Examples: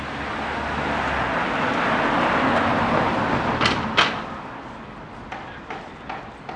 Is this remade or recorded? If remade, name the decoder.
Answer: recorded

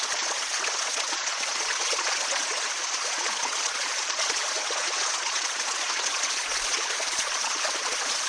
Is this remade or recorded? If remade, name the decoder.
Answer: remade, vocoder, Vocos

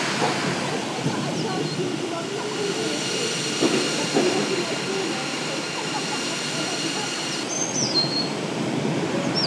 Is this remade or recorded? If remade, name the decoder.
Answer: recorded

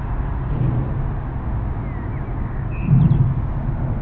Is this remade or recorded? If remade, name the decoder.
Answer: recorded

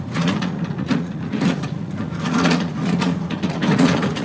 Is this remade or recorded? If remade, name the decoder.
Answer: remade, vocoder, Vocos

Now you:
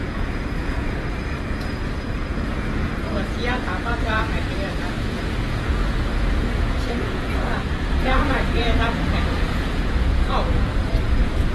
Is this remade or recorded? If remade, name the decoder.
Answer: remade, vocoder, Vocos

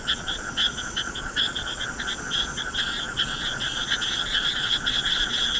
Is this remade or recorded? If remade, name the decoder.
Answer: remade, vocoder, Vocos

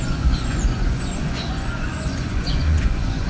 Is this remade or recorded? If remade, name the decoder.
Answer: remade, vocoder, Vocos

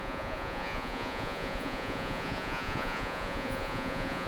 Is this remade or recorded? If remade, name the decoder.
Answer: remade, vocoder, Vocos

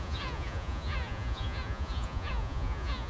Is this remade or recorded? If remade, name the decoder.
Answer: remade, vocoder, Vocos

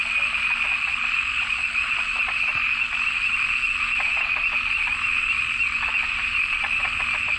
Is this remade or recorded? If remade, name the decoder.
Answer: recorded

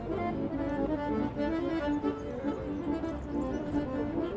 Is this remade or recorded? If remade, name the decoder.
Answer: recorded